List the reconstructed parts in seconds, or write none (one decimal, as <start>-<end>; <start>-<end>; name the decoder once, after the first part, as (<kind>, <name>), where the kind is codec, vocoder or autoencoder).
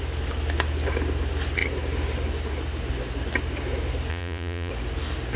4.1-4.7 (vocoder, Vocos)